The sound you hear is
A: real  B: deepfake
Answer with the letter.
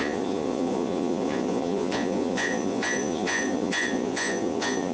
B